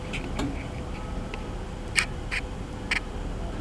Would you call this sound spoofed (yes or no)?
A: yes